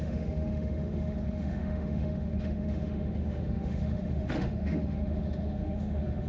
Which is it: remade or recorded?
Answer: remade